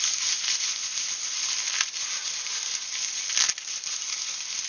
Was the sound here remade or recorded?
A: recorded